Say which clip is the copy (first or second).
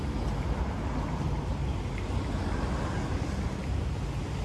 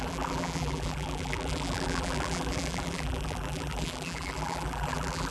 second